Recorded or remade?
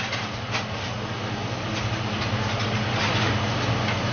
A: recorded